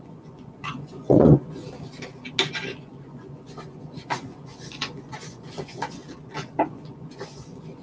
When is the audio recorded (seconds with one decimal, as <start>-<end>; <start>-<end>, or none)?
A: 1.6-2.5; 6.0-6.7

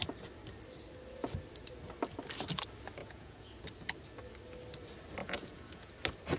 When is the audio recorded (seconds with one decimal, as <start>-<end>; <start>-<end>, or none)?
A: 0.0-3.0; 3.5-5.2; 5.9-6.4

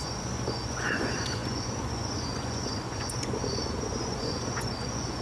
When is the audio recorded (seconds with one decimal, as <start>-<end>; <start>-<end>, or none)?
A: none

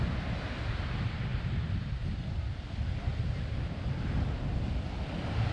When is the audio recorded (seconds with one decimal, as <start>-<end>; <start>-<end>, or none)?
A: 0.0-5.5

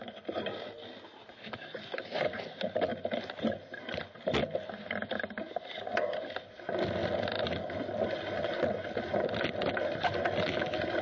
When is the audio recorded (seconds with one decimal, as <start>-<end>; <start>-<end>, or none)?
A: 0.0-11.0

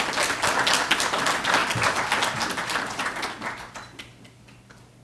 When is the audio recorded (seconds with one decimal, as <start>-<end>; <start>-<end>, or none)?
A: 0.0-5.0

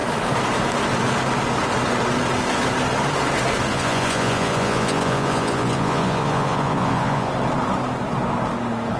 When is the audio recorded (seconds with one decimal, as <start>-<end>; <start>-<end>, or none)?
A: 0.0-3.7; 7.3-9.0

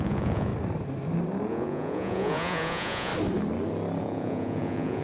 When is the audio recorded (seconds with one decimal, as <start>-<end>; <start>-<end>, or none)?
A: 0.5-1.5; 3.1-4.0